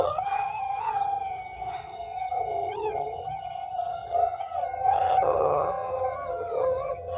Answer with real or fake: fake